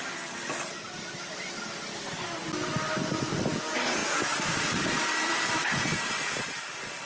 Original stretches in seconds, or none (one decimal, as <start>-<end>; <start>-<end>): 0.0-7.1